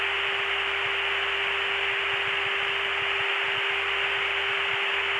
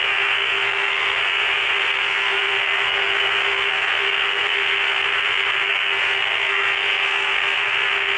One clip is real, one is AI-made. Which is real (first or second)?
first